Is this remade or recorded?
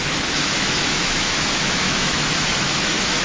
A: remade